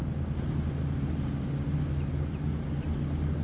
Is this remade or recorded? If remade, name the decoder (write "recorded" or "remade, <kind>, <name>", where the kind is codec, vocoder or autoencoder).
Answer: recorded